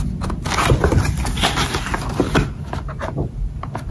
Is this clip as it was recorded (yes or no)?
yes